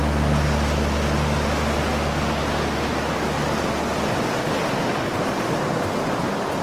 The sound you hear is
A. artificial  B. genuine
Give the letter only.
B